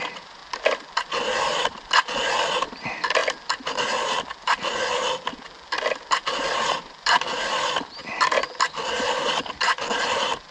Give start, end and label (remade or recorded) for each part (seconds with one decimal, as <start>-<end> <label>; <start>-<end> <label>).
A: 0.0-0.4 remade; 0.4-1.0 recorded; 1.0-3.2 remade; 3.2-5.8 recorded; 5.8-8.0 remade; 8.0-8.7 recorded; 8.7-10.5 remade